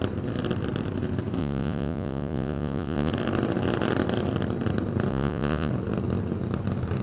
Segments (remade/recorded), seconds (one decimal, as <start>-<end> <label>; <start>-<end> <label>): 0.0-1.4 recorded; 1.4-3.1 remade; 3.1-5.1 recorded; 5.1-5.7 remade; 5.7-7.0 recorded